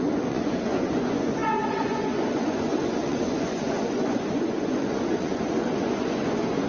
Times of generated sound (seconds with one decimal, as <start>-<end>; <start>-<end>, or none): 0.0-6.7